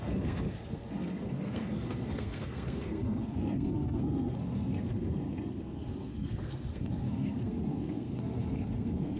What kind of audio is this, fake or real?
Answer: fake